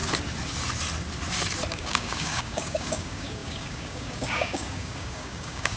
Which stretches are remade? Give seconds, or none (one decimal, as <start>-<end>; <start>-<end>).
1.7-5.8